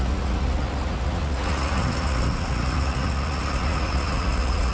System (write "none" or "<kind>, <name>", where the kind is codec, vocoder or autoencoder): vocoder, Vocos